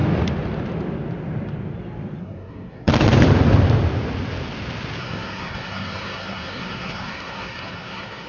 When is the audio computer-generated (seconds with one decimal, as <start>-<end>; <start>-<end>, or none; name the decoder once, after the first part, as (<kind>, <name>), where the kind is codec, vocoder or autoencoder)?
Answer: 2.2-2.9 (codec, SNAC); 5.0-8.3